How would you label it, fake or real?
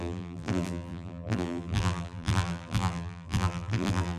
fake